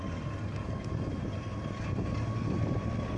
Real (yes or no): yes